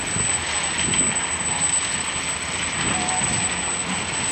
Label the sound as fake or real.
real